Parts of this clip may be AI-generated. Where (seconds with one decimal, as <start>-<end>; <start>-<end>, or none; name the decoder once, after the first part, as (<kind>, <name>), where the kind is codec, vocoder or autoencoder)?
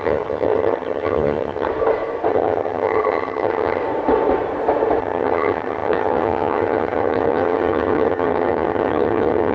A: 0.0-1.7 (vocoder, HiFi-GAN); 2.3-3.8; 5.0-9.5